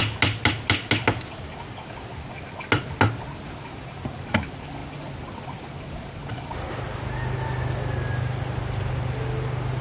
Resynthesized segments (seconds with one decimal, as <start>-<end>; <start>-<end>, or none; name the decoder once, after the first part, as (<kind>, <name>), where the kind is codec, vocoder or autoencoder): none